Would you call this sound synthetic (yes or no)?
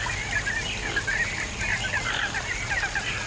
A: no